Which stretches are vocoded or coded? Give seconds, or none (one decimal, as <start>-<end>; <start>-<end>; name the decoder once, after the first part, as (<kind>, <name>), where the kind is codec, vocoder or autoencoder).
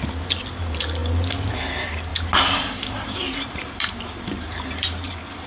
2.1-5.5 (vocoder, BigVGAN v2)